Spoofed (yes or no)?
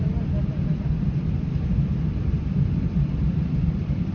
no